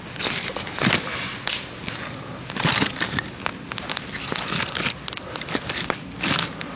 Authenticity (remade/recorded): recorded